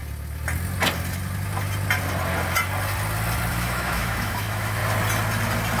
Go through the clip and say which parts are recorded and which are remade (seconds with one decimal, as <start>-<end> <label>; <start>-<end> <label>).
0.0-3.5 recorded; 3.5-4.8 remade; 4.8-5.8 recorded